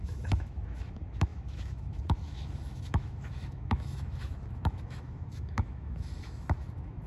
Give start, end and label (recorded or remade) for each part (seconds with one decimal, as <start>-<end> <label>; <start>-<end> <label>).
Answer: 0.0-7.1 remade